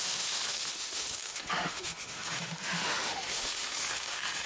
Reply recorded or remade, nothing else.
remade